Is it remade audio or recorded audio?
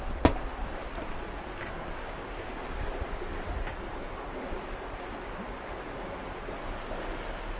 recorded